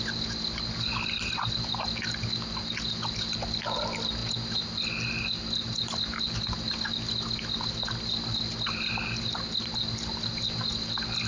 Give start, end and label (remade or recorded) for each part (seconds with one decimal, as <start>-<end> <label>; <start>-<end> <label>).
0.0-11.3 recorded